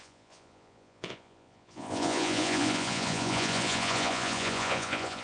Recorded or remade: remade